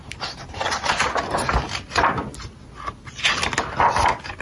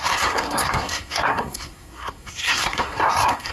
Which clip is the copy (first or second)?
second